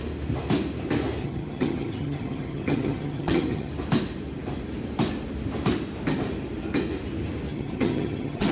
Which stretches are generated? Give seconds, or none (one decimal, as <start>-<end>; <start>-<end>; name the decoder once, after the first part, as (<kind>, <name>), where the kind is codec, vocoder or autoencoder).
1.2-3.7 (vocoder, HiFi-GAN); 7.5-8.5

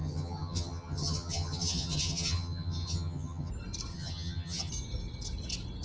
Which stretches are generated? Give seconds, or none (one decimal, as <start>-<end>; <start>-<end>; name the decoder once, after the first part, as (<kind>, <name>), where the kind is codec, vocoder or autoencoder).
0.0-3.5 (vocoder, HiFi-GAN); 3.9-4.7

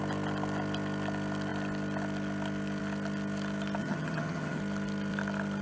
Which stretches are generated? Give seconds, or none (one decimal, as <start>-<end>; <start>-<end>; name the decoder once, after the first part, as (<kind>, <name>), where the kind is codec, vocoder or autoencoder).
3.8-4.6 (vocoder, HiFi-GAN)